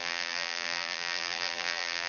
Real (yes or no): no